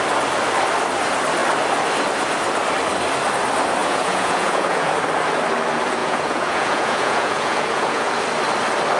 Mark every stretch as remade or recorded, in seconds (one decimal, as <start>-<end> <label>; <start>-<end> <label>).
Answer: 0.0-3.8 recorded; 3.8-4.9 remade; 4.9-6.0 recorded; 6.0-8.1 remade; 8.1-9.0 recorded